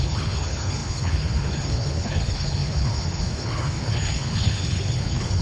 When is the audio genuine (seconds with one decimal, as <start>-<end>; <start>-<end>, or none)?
none